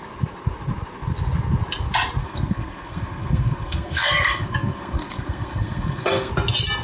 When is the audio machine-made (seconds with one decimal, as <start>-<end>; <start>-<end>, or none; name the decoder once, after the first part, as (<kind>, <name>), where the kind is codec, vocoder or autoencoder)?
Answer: 2.2-6.3 (codec, SNAC)